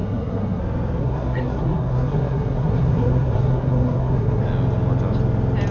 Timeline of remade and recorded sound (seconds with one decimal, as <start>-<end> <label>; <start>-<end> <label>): 0.0-0.6 remade; 0.6-1.0 recorded; 1.0-4.4 remade; 4.4-5.7 recorded